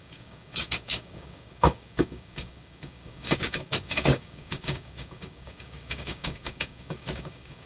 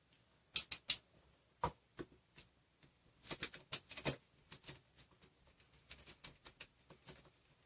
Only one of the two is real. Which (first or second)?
second